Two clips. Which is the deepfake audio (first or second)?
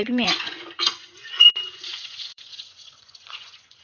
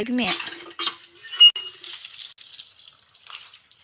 first